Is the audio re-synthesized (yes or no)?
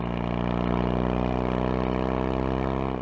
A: no